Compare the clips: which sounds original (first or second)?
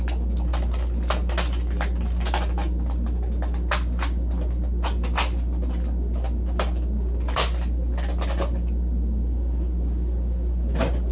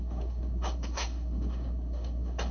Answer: first